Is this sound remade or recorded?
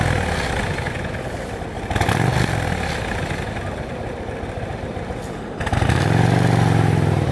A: recorded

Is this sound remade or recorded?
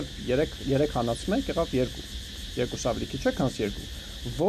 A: recorded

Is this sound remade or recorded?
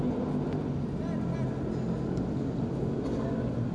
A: recorded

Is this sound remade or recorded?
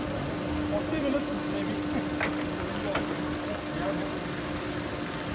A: recorded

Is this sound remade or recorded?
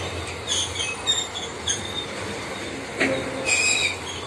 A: recorded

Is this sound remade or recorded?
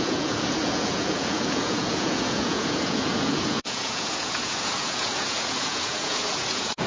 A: remade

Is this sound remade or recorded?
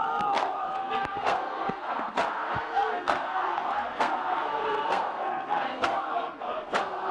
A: remade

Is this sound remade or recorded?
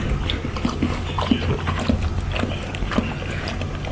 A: recorded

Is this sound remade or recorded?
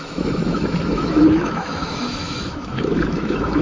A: remade